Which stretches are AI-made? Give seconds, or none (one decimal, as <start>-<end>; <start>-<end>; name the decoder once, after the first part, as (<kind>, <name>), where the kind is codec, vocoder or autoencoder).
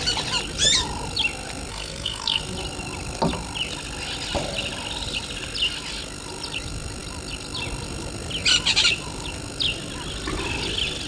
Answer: 1.7-2.4 (codec, SNAC)